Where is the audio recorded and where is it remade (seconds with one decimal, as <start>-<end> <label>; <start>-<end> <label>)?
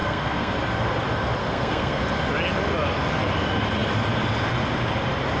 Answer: 0.0-0.5 remade; 0.5-1.4 recorded; 1.4-2.0 remade; 2.0-5.4 recorded